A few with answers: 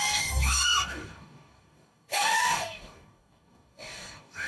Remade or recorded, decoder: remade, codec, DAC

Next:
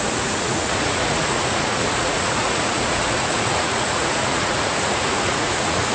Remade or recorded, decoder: remade, vocoder, Vocos